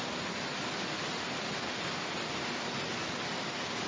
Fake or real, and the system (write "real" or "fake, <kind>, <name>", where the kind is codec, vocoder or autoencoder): real